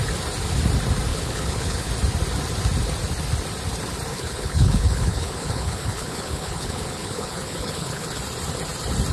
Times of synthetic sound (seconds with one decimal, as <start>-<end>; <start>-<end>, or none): 1.1-1.9; 4.1-8.2

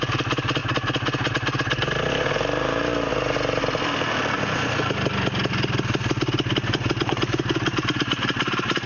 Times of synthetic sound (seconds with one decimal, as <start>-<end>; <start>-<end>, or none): none

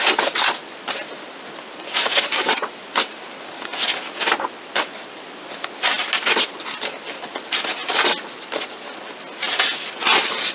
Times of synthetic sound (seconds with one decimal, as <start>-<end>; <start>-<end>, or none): none

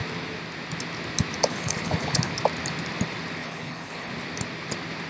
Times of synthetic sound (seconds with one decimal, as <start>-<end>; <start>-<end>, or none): 1.5-2.3; 3.4-4.1